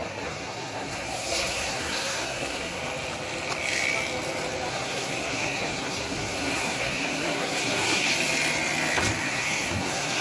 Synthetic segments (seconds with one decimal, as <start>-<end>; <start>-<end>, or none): 0.0-2.8; 4.7-8.1; 9.2-10.2